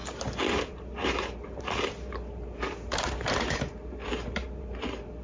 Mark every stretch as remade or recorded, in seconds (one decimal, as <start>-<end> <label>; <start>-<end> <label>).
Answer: 0.0-5.2 remade